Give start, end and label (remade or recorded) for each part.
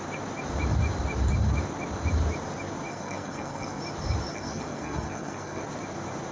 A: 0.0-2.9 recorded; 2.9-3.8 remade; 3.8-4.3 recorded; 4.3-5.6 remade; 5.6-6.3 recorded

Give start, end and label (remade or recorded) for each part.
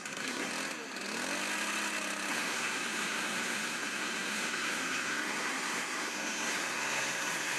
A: 0.0-0.5 remade; 0.5-2.3 recorded; 2.3-7.6 remade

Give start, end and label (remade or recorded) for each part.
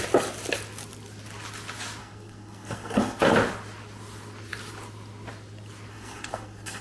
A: 0.0-2.0 recorded; 2.0-3.2 remade; 3.2-5.9 recorded; 5.9-6.8 remade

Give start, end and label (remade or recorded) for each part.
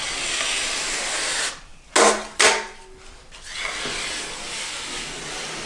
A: 0.0-5.7 recorded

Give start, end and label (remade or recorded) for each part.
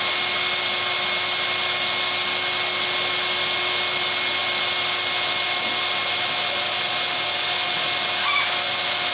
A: 0.0-9.1 recorded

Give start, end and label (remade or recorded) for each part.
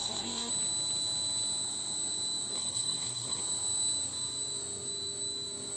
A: 0.0-0.5 remade; 0.5-2.5 recorded; 2.5-3.4 remade; 3.4-5.8 recorded